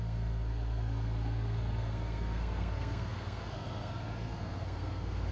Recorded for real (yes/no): no